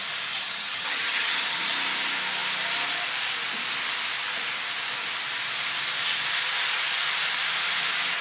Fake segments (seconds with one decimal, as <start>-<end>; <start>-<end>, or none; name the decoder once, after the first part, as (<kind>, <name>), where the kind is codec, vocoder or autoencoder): 0.4-1.7 (vocoder, HiFi-GAN)